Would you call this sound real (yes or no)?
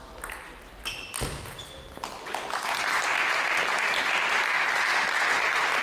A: yes